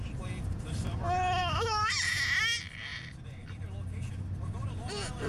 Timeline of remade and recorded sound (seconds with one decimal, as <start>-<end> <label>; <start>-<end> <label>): 0.0-1.4 recorded; 1.4-1.9 remade; 1.9-5.3 recorded